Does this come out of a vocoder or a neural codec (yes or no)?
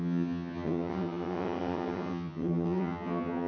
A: yes